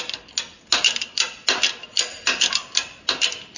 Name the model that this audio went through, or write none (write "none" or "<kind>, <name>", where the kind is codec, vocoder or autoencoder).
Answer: none